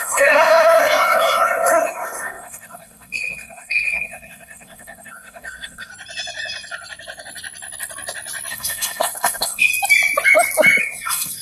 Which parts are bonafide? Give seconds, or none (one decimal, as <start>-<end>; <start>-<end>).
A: 5.9-8.5; 9.7-10.8